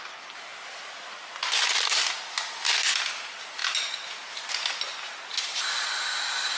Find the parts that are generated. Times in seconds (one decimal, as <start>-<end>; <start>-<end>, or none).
none